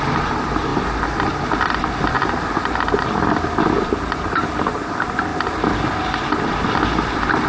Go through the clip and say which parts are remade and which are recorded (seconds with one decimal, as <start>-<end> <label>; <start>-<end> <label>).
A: 0.0-5.3 remade; 5.3-6.4 recorded; 6.4-7.5 remade